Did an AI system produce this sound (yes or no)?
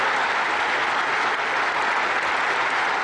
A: no